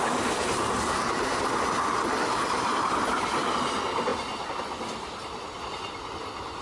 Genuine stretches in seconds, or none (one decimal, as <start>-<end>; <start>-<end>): 0.0-6.6